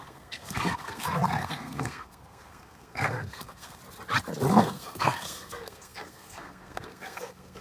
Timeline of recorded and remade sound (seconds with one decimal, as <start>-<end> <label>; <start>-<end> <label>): 0.0-3.8 remade; 3.8-4.5 recorded; 4.5-7.6 remade

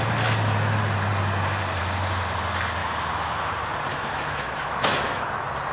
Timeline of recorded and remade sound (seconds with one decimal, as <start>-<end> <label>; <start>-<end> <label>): 0.0-2.8 recorded; 2.8-3.5 remade; 3.5-3.9 recorded; 3.9-5.3 remade; 5.3-5.7 recorded